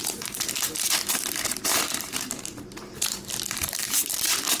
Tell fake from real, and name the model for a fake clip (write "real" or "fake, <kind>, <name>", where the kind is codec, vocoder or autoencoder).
fake, vocoder, BigVGAN v2